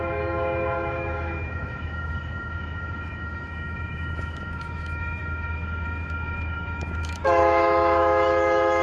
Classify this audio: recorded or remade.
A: remade